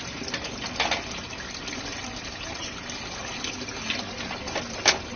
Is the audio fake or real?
real